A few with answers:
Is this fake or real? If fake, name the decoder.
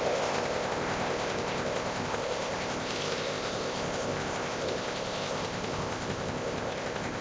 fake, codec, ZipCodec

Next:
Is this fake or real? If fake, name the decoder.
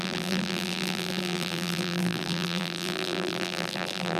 fake, vocoder, BigVGAN v2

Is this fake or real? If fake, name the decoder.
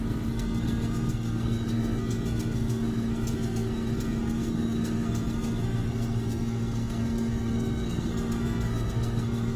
fake, codec, SNAC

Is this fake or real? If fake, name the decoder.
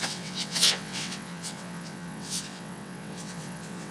fake, vocoder, WaveNeXt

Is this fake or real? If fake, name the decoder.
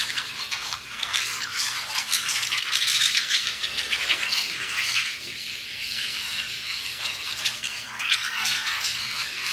fake, codec, SNAC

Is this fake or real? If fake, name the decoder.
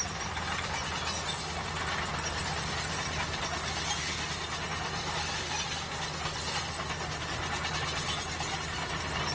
real